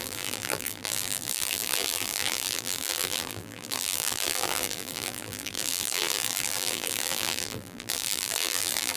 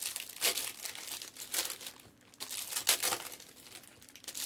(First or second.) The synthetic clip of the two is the first